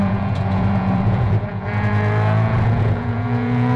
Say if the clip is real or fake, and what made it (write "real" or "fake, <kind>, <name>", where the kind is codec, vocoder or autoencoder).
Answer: fake, vocoder, Vocos